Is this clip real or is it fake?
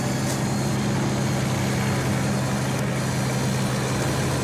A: real